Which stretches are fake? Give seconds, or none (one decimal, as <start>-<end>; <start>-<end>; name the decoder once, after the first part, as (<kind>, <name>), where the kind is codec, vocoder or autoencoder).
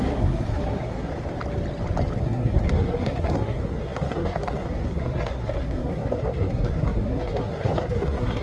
0.0-1.1 (codec, SNAC); 2.2-8.4